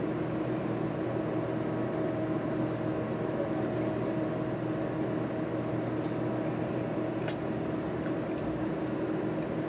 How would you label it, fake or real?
real